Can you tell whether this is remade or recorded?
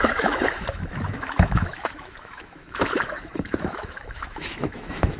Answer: remade